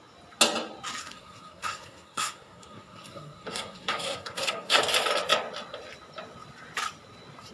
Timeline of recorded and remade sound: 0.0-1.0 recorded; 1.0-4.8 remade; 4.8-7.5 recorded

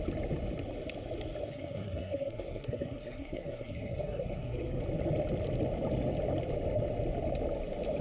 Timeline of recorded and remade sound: 0.0-1.5 recorded; 1.5-4.8 remade; 4.8-8.0 recorded

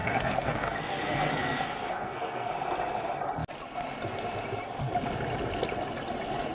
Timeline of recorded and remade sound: 0.0-2.5 remade; 2.5-6.5 recorded